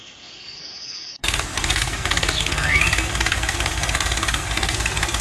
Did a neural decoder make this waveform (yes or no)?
yes